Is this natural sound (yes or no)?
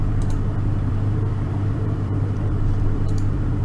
no